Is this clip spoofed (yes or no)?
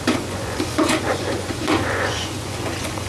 yes